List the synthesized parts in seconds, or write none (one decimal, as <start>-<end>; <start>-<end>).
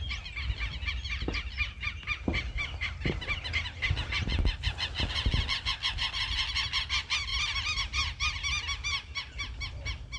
none